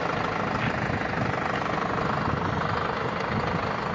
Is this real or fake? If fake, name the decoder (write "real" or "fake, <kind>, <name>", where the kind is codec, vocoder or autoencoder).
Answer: real